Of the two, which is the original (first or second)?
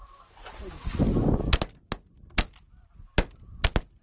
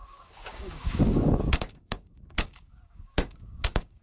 first